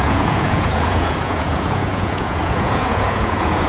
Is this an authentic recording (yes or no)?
no